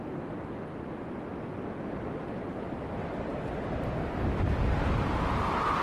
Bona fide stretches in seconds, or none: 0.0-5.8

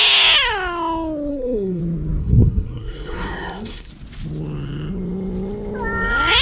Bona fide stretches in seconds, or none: 0.0-1.3; 1.8-2.2; 3.9-6.4

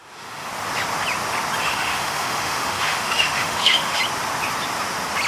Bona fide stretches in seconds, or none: 0.5-1.6; 4.0-5.3

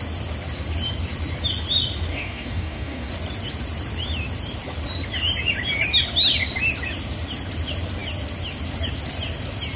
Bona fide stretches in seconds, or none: 0.0-2.1; 3.1-9.8

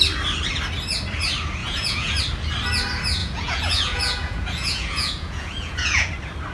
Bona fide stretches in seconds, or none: 0.0-1.6; 2.2-3.2; 6.1-6.5